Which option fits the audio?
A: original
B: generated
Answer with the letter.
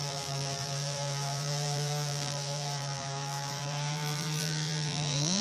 B